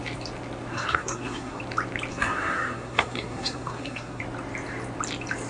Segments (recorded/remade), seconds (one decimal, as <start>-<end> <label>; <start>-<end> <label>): 0.0-0.7 recorded; 0.7-1.6 remade; 1.6-2.1 recorded; 2.1-4.2 remade; 4.2-5.5 recorded